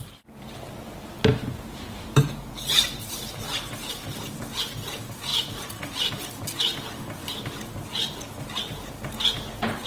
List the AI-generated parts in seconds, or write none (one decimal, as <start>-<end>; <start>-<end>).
1.3-4.2; 5.3-6.1